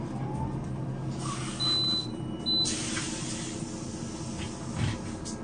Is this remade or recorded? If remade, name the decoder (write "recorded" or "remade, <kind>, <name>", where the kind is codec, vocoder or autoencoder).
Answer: recorded